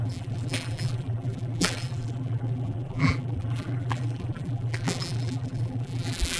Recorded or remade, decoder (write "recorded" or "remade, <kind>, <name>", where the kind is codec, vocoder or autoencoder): remade, vocoder, BigVGAN v2